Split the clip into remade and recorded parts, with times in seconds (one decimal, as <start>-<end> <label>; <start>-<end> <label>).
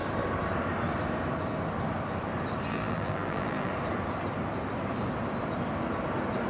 0.0-2.7 recorded; 2.7-3.7 remade; 3.7-6.5 recorded